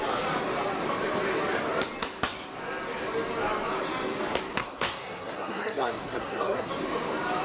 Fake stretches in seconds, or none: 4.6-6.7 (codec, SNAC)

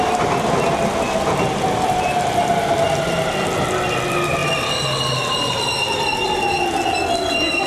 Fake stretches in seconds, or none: none

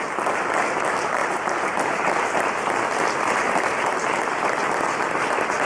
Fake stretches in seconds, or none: 1.2-4.6 (vocoder, BigVGAN v2)

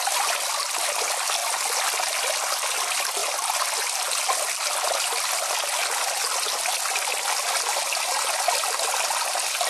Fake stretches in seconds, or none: none

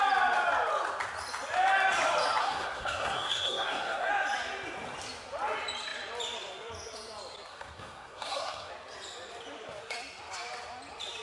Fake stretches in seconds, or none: 2.4-4.1 (codec, SNAC); 7.5-8.7

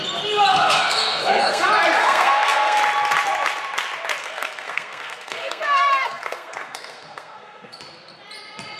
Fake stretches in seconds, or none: 0.5-1.6 (codec, SNAC); 2.0-2.8; 4.2-7.8

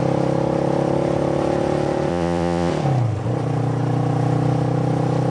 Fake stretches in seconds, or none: 2.1-2.7 (vocoder, Vocos)